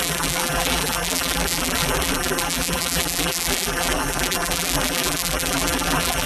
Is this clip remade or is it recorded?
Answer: remade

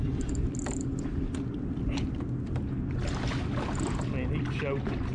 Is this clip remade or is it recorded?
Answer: recorded